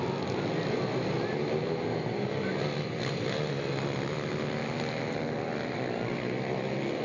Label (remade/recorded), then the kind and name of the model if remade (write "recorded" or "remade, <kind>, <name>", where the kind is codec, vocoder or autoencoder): recorded